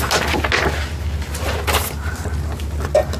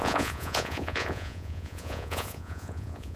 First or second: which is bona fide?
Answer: first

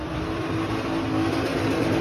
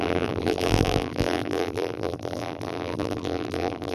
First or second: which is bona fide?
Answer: first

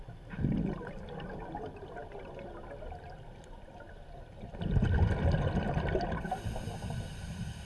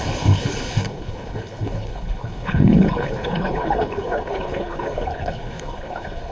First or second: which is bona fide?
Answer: first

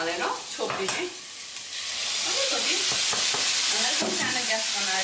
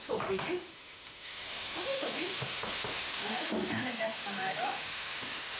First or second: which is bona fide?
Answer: first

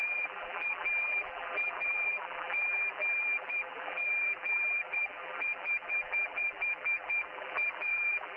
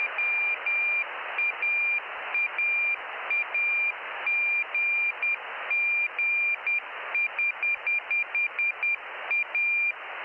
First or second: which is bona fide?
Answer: second